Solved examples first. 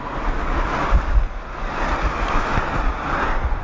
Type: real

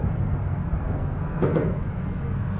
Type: fake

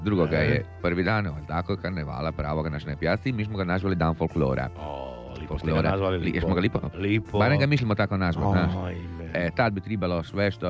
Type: real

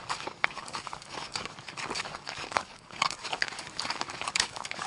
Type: fake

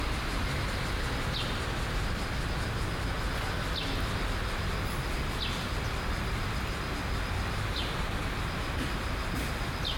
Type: real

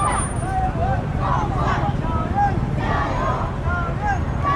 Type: real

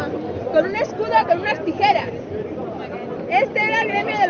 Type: real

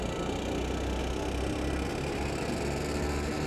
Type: real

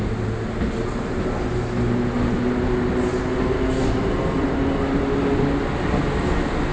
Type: real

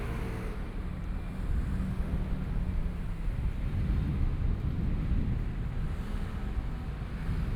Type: real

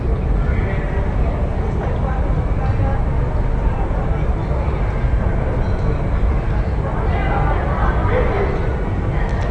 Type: real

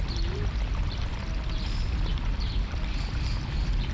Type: fake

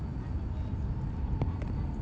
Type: real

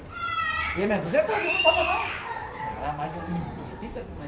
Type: fake